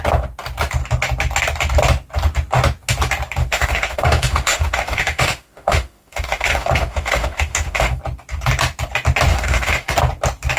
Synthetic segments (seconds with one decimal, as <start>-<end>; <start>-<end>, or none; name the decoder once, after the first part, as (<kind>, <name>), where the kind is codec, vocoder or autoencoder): 3.4-8.0 (autoencoder, DAC-VAE); 9.3-9.9